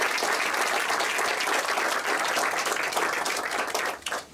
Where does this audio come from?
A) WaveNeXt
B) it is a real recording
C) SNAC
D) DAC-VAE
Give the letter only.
B